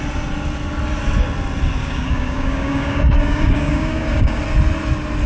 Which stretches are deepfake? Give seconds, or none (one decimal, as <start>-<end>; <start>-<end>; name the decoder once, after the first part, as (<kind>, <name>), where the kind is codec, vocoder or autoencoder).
1.8-4.4 (codec, DAC)